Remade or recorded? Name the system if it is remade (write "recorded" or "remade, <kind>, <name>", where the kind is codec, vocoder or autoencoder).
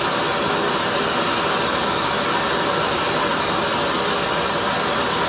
recorded